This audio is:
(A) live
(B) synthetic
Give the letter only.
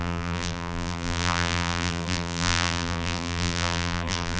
B